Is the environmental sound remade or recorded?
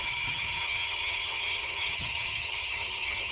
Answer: remade